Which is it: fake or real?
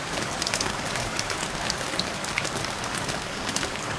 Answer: fake